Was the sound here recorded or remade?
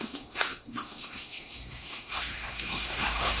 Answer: remade